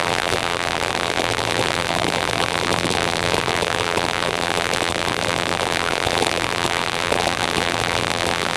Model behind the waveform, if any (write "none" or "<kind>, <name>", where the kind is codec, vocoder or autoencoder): vocoder, BigVGAN v2